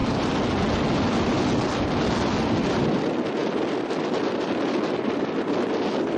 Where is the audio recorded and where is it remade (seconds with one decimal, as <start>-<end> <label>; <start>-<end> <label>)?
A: 0.0-6.2 recorded

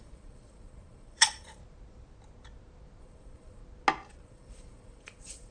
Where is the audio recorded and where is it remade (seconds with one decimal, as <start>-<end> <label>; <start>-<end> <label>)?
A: 0.0-1.6 remade; 1.6-3.0 recorded; 3.0-3.6 remade; 3.6-4.1 recorded; 4.1-5.5 remade

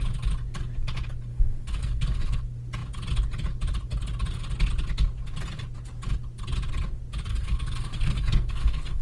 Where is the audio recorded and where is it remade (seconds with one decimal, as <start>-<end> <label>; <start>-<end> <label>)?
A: 0.0-1.3 recorded; 1.3-2.4 remade; 2.4-7.3 recorded; 7.3-9.0 remade

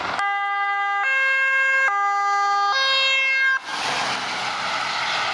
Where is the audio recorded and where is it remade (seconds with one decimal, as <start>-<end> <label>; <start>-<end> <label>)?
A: 0.0-5.3 recorded